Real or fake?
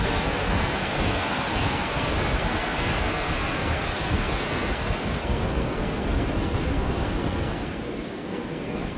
fake